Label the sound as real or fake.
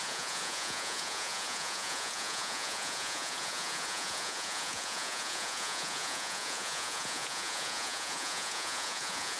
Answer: fake